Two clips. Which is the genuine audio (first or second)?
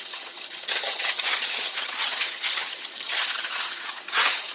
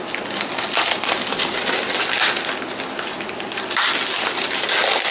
second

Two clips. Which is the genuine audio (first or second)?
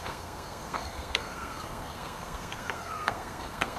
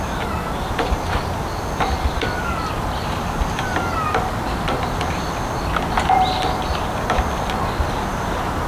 second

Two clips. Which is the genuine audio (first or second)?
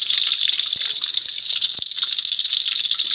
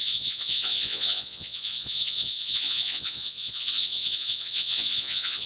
first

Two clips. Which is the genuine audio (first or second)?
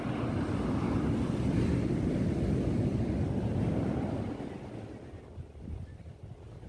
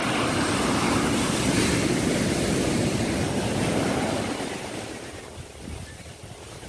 first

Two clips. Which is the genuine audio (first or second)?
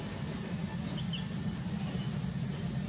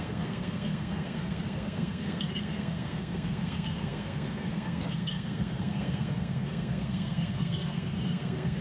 first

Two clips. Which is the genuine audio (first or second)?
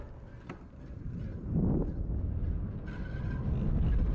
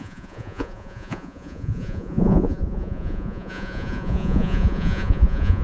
first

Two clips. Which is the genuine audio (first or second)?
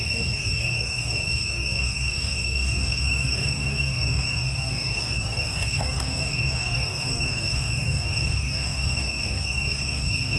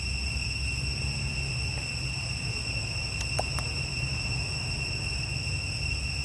second